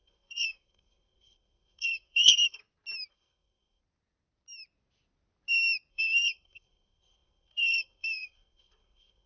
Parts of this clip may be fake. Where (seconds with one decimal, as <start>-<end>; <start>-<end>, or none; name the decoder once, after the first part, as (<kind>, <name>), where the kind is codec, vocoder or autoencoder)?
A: 0.0-2.6 (codec, SNAC); 3.1-3.8; 5.9-9.3